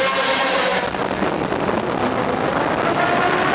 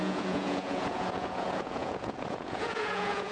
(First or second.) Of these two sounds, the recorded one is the first